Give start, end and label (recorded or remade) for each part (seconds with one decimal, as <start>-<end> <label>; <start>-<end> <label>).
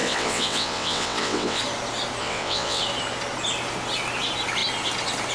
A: 0.0-1.6 remade; 1.6-2.2 recorded; 2.2-2.8 remade; 2.8-5.3 recorded